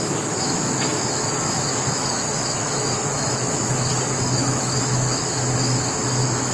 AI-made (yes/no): yes